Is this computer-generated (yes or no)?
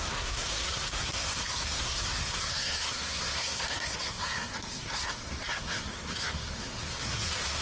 yes